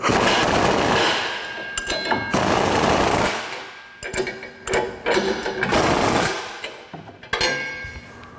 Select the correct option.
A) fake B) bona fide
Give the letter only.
B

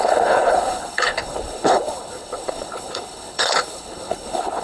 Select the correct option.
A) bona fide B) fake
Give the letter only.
B